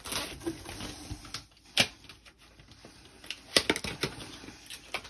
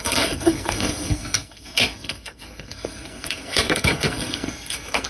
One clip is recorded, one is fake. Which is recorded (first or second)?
first